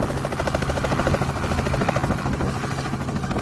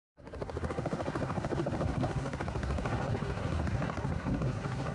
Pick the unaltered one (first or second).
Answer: first